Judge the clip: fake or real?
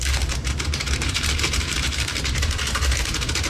fake